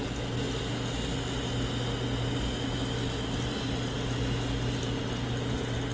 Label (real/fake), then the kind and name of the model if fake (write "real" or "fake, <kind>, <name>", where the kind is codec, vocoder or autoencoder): real